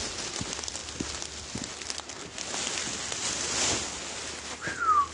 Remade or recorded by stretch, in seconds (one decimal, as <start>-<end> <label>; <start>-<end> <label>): 0.0-5.1 recorded